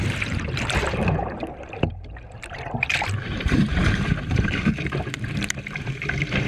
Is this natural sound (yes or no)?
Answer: no